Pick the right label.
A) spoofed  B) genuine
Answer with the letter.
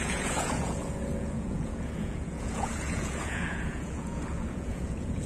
A